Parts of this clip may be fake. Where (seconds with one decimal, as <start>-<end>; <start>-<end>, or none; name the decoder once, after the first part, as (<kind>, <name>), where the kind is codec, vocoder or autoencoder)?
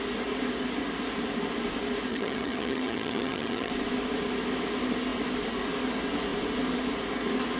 2.1-3.7 (vocoder, HiFi-GAN)